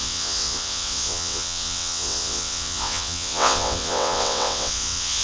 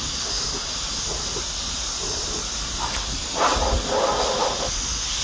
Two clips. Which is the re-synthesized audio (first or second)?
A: first